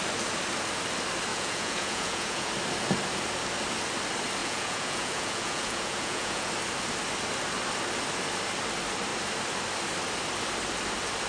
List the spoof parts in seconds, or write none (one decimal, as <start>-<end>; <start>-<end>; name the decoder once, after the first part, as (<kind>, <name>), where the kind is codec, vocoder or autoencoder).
1.3-2.5 (vocoder, Vocos); 4.4-6.5